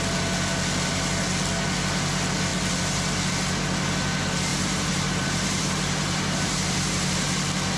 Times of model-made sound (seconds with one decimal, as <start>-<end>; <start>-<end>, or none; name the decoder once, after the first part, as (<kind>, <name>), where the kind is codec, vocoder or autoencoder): 4.5-7.1 (vocoder, BigVGAN v2)